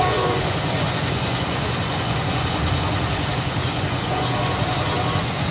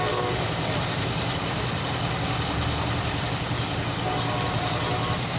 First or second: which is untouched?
second